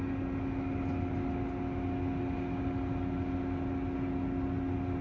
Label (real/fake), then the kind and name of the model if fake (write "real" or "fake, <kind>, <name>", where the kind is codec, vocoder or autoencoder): real